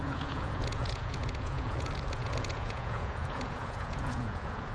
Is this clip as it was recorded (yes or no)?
no